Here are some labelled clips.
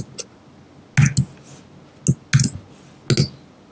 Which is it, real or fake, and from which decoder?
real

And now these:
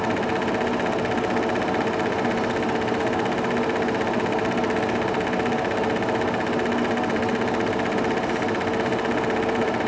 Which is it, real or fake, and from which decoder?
real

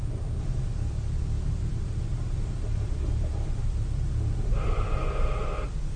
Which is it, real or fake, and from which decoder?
real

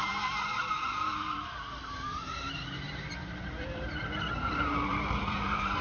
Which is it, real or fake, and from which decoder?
fake, vocoder, BigVGAN v2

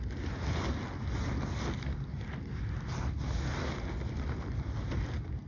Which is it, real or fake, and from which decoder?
real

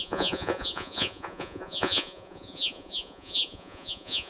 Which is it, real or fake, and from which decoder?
fake, vocoder, Vocos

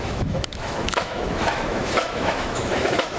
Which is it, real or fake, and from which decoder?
fake, autoencoder, DAC-VAE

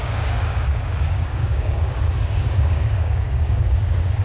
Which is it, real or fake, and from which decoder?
fake, codec, DAC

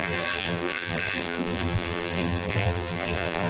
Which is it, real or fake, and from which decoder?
fake, vocoder, BigVGAN v2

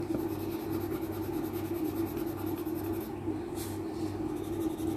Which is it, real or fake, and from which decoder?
real